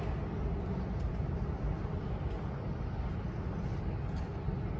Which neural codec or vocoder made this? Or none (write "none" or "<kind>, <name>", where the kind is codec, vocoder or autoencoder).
none